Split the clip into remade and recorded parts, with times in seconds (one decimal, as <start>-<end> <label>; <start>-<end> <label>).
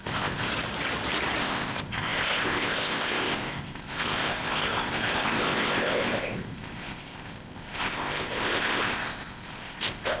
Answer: 0.0-0.5 remade; 0.5-1.4 recorded; 1.4-10.2 remade